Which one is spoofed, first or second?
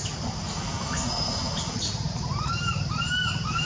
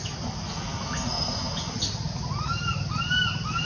first